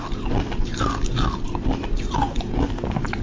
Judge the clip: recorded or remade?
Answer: recorded